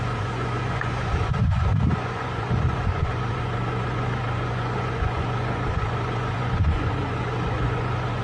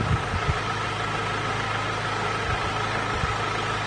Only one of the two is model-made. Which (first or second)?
first